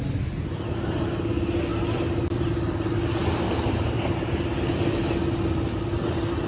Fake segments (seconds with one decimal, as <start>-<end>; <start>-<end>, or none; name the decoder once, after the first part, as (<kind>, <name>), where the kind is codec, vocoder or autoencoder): none